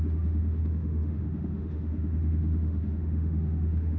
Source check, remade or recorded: remade